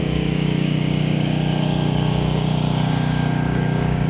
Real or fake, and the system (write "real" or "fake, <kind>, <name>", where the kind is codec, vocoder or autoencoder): fake, codec, DAC